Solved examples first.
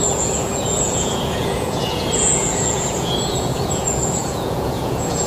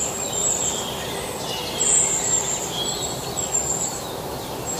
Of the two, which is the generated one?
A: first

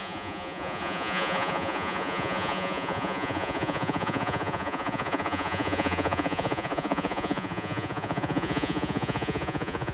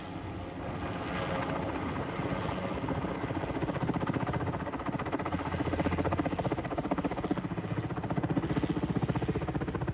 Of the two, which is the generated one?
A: first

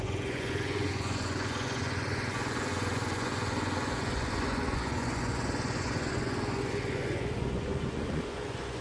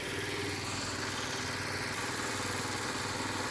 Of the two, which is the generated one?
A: first